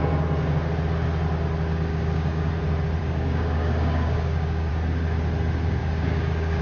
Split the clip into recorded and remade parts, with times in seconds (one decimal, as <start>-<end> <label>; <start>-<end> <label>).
0.0-1.9 recorded; 1.9-2.5 remade; 2.5-3.0 recorded; 3.0-4.7 remade; 4.7-5.8 recorded; 5.8-6.6 remade